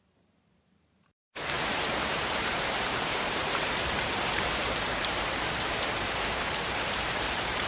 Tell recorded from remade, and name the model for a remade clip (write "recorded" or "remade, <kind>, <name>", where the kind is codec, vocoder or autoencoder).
remade, vocoder, BigVGAN v2